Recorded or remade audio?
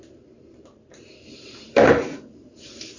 remade